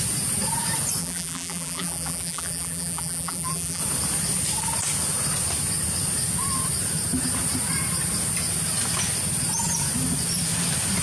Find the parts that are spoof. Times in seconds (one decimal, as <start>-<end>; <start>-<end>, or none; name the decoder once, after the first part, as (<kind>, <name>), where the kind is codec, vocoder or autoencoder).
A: 1.0-3.8 (vocoder, BigVGAN v2)